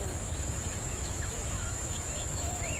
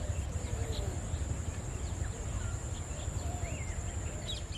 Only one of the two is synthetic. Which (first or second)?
first